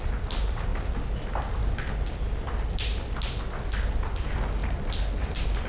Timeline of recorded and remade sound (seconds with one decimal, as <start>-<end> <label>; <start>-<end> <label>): 0.0-5.7 recorded